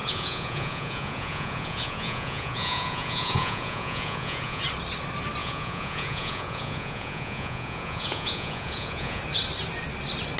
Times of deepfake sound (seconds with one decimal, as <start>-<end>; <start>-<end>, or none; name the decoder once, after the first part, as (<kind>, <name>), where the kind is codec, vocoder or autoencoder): 0.0-4.6 (vocoder, Vocos); 5.4-9.2